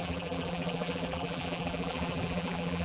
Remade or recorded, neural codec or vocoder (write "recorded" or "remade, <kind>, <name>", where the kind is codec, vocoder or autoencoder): remade, vocoder, BigVGAN v2